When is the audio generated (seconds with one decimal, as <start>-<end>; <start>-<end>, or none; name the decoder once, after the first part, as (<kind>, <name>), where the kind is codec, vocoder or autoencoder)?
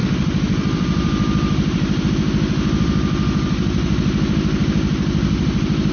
0.0-2.1 (vocoder, BigVGAN v2)